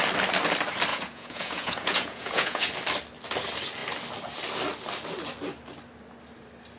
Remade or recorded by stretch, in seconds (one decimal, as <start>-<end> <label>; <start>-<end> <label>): 0.0-0.9 recorded; 0.9-2.7 remade; 2.7-6.8 recorded

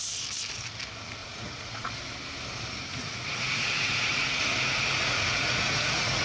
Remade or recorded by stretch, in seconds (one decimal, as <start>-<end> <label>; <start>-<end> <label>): 0.0-1.2 recorded; 1.2-1.9 remade; 1.9-2.9 recorded; 2.9-6.2 remade

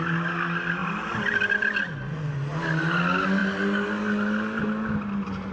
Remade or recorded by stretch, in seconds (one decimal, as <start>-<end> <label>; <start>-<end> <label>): 0.0-5.5 recorded